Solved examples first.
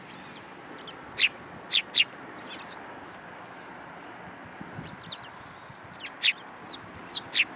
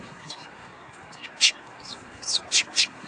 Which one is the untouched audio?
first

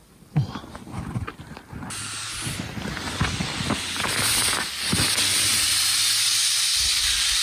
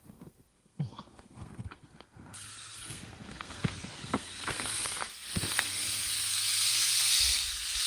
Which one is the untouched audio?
first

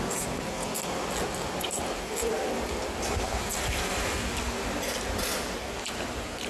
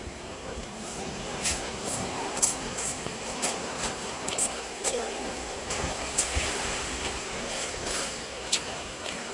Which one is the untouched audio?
first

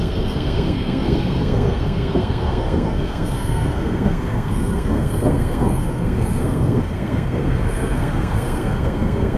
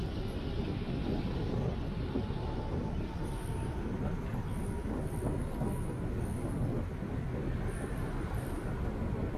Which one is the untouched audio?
second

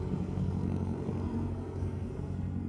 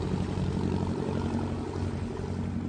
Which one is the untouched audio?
second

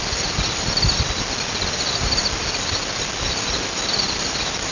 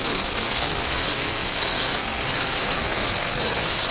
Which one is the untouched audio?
first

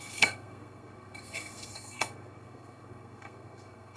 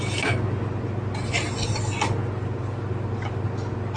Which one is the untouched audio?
second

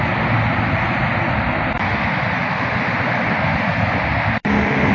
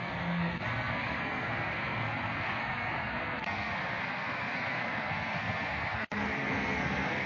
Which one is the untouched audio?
first